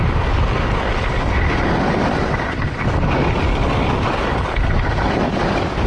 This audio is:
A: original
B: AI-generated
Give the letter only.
A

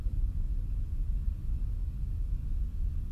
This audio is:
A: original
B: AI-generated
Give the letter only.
A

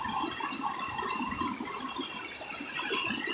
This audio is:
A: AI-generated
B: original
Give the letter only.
B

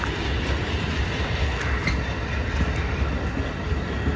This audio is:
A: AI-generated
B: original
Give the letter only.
B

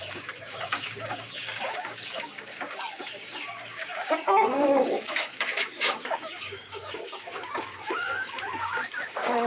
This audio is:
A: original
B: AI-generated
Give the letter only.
B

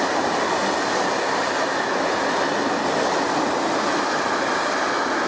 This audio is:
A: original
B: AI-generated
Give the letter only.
A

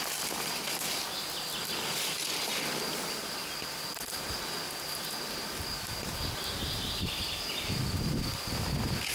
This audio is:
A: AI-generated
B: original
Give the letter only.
B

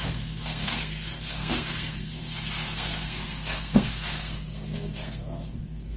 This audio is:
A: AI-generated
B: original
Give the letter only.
A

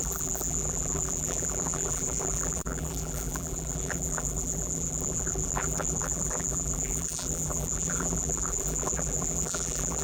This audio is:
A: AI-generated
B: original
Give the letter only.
A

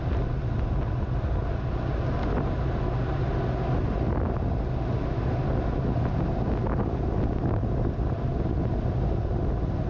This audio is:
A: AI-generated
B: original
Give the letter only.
B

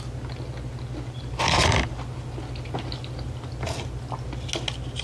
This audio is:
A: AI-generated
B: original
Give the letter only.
B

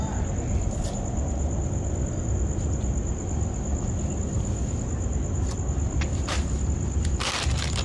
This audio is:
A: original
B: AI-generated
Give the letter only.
A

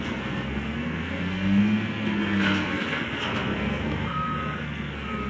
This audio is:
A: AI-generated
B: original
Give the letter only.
A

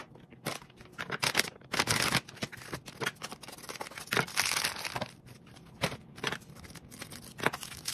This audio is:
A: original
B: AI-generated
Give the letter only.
A